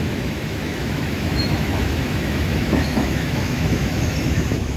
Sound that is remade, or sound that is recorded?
remade